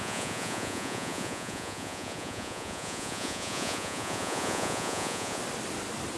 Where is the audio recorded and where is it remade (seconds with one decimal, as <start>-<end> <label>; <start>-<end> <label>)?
0.0-5.4 remade; 5.4-6.2 recorded